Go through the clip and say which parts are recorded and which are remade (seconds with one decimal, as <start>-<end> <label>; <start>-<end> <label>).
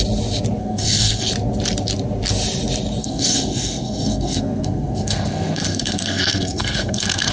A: 0.0-0.6 recorded; 0.6-1.3 remade; 1.3-3.0 recorded; 3.0-7.3 remade